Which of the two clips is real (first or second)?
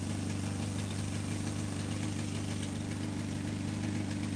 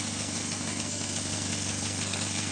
first